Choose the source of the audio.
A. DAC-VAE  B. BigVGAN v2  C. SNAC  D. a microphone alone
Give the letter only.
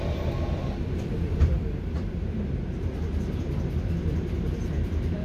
D